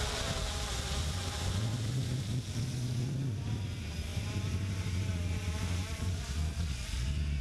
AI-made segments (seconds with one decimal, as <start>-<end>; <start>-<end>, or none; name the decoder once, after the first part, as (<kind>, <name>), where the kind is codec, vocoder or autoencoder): 4.1-5.1 (vocoder, BigVGAN v2); 5.8-6.4